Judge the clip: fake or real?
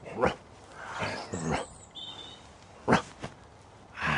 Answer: real